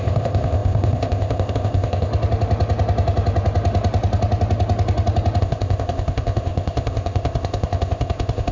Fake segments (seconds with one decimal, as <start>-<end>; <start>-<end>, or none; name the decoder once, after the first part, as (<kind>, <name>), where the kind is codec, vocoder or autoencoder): 0.0-2.1 (codec, ZipCodec); 5.4-8.5